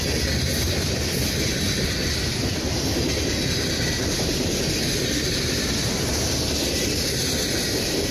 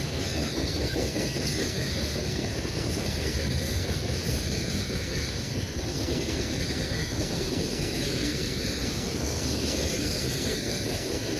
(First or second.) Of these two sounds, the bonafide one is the first